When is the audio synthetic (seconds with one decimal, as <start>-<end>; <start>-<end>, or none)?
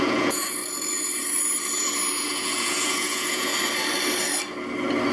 0.0-0.6; 2.2-3.5